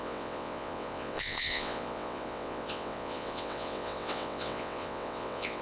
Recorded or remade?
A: remade